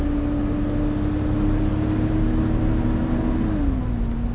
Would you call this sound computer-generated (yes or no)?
no